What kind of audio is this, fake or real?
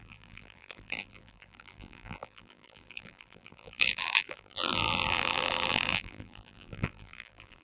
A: fake